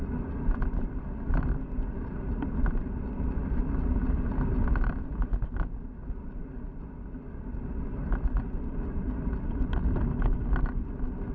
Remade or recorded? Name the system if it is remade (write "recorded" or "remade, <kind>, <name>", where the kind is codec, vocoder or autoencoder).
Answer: recorded